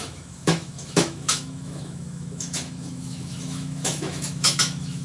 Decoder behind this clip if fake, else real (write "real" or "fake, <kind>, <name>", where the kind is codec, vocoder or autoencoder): fake, autoencoder, DAC-VAE